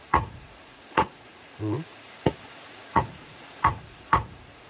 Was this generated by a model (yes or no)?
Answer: yes